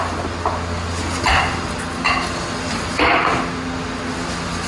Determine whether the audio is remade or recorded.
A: recorded